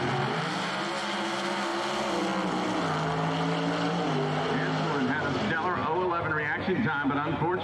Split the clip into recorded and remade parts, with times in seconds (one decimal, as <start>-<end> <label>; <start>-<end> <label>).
0.0-7.6 recorded